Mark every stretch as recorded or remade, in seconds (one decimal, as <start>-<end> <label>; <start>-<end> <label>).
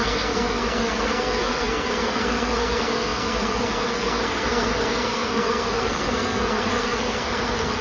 0.0-7.8 remade